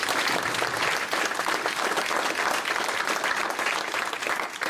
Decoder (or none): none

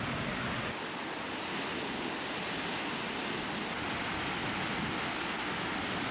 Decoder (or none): none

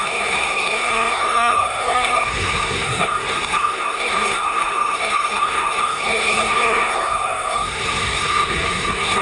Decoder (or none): codec, SNAC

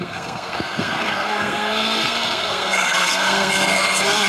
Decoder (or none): codec, SNAC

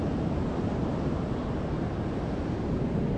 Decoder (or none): none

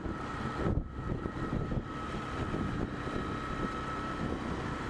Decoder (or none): none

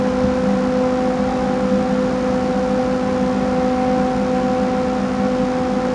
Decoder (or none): none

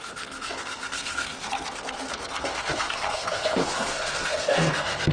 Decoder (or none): codec, SNAC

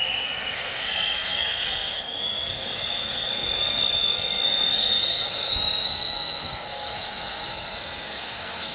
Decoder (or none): codec, SNAC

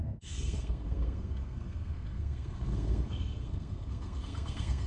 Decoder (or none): codec, SNAC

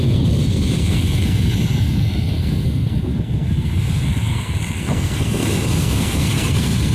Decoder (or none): codec, SNAC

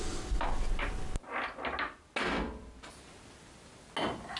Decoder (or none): none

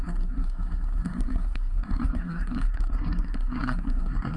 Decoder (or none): codec, SNAC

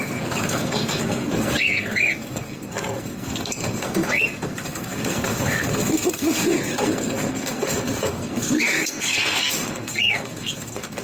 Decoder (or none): codec, SNAC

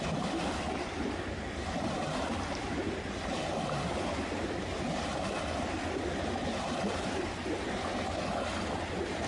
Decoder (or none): none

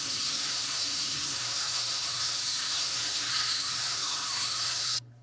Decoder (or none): codec, SNAC